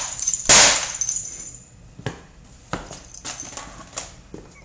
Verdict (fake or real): real